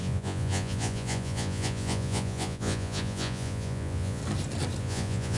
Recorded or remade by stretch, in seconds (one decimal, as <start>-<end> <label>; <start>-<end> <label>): 0.0-4.2 remade; 4.2-4.8 recorded; 4.8-5.4 remade